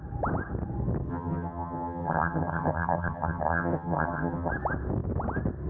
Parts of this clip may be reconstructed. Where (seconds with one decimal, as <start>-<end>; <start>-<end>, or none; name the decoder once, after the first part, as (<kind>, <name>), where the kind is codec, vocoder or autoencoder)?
1.1-4.5 (vocoder, HiFi-GAN)